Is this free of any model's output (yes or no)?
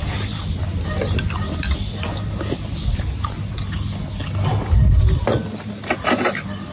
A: yes